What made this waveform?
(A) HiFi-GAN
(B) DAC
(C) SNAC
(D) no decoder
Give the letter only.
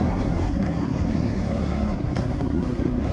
C